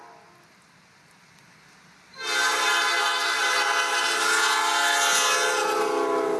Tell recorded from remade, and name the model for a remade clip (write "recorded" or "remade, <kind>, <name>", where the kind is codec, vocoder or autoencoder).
recorded